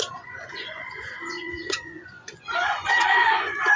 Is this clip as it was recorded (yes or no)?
no